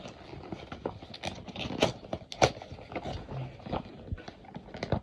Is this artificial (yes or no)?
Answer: no